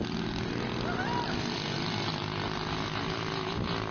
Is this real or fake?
real